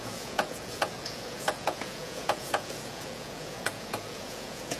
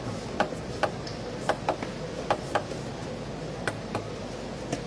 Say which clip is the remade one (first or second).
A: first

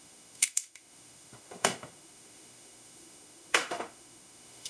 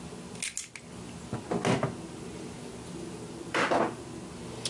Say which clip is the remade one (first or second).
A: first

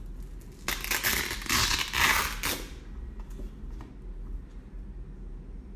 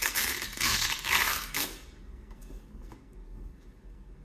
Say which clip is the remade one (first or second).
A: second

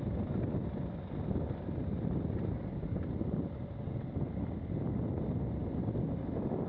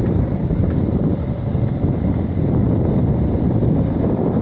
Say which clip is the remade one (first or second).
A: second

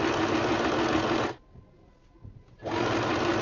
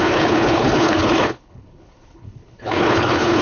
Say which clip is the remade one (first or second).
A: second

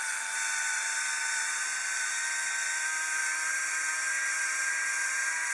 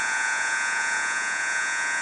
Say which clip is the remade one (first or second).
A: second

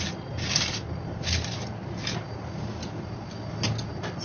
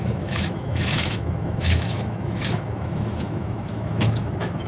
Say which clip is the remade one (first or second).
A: second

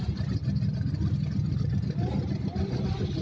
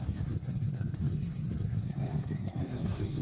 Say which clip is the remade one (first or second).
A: second